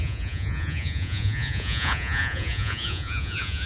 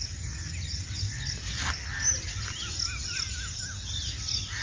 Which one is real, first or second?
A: second